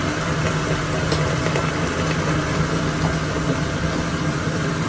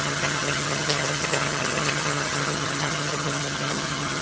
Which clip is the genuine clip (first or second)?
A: first